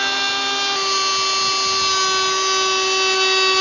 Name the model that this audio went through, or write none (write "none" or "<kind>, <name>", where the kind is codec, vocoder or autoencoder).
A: none